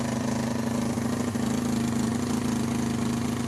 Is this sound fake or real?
real